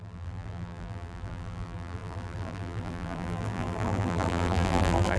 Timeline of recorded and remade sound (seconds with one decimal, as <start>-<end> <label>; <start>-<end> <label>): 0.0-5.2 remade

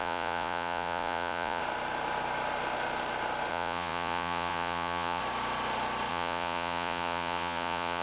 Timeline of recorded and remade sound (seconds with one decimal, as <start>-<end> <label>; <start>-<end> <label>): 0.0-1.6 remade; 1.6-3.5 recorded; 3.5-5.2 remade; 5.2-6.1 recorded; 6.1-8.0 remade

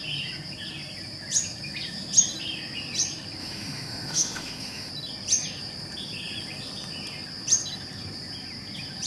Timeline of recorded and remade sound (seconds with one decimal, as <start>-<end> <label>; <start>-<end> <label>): 0.0-3.4 recorded; 3.4-4.9 remade; 4.9-9.1 recorded